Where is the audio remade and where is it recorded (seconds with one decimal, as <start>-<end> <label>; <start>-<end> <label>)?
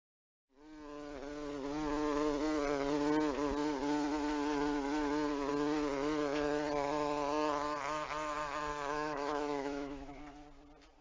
0.0-8.7 recorded; 8.7-10.2 remade; 10.2-11.0 recorded